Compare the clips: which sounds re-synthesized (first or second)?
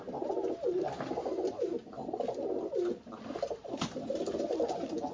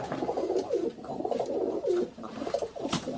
second